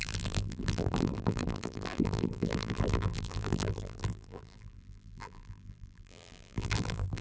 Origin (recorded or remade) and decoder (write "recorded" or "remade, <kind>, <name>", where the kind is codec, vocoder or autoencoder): remade, vocoder, BigVGAN v2